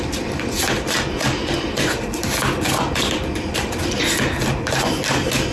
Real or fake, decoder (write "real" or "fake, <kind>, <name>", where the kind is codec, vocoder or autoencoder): real